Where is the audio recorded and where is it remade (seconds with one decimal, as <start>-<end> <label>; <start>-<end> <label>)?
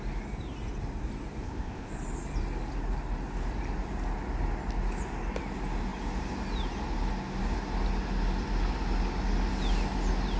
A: 0.0-1.4 recorded; 1.4-1.9 remade; 1.9-10.4 recorded